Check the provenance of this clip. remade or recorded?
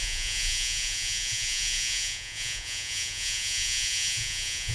remade